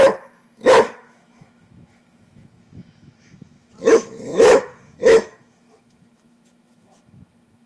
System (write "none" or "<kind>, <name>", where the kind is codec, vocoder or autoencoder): autoencoder, DAC-VAE